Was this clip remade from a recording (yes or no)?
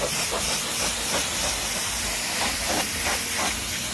no